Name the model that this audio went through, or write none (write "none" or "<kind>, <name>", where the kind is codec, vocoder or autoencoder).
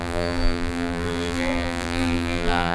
vocoder, BigVGAN v2